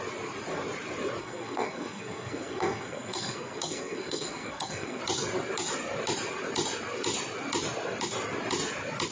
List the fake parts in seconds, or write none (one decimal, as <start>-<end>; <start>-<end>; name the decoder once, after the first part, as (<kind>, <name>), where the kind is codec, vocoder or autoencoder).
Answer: 1.2-5.0 (codec, SNAC)